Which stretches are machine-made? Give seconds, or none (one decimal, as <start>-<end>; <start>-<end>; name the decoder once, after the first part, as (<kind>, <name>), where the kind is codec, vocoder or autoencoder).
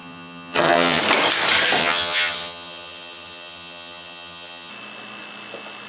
0.0-1.0 (vocoder, HiFi-GAN); 1.8-4.7